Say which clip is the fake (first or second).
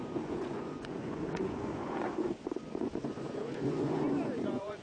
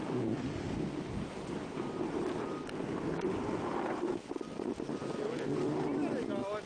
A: first